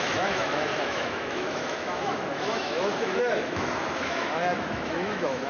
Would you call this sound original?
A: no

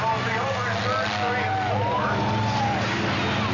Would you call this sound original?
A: yes